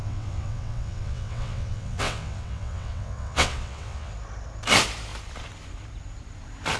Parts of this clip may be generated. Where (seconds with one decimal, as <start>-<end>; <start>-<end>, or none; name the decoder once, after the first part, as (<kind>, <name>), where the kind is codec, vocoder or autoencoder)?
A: 0.0-4.1 (vocoder, WaveNeXt)